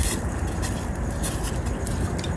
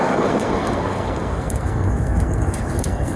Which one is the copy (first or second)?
second